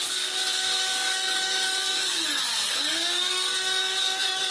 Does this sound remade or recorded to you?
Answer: remade